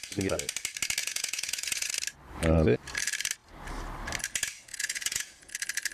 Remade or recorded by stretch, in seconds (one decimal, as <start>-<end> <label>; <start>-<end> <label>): 0.0-1.0 recorded; 1.0-1.9 remade; 1.9-4.7 recorded; 4.7-5.5 remade; 5.5-5.9 recorded